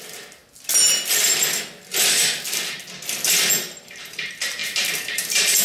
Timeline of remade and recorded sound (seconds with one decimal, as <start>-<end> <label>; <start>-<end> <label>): 0.0-0.4 remade; 0.4-3.8 recorded; 3.8-5.6 remade